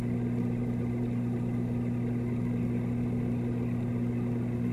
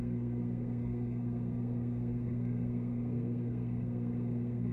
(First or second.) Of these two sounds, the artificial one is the second